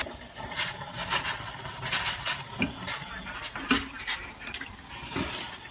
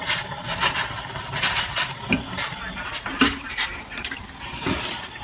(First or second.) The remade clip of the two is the second